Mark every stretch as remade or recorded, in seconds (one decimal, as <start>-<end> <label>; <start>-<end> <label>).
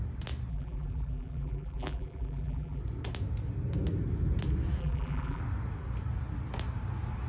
0.0-0.5 recorded; 0.5-2.8 remade; 2.8-4.8 recorded; 4.8-5.4 remade; 5.4-7.3 recorded